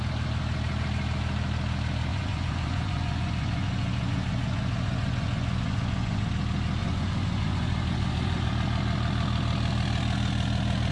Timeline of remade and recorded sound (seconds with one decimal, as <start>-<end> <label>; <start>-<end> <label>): 0.0-2.1 recorded; 2.1-6.3 remade; 6.3-6.8 recorded; 6.8-8.5 remade; 8.5-10.9 recorded